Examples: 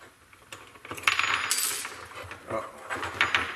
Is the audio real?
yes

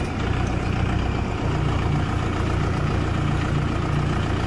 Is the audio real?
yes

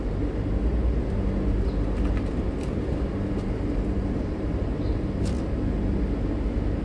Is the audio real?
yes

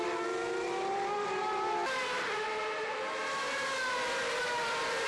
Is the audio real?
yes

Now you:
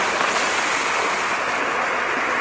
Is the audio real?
yes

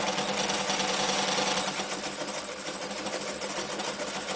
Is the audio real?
yes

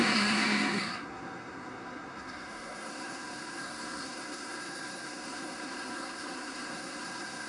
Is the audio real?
no